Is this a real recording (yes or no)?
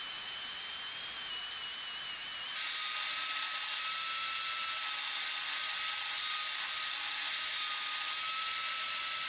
yes